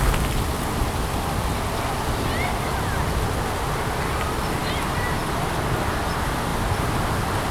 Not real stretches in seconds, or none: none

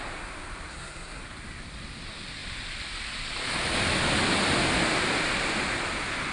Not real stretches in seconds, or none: 0.7-1.2 (codec, SNAC)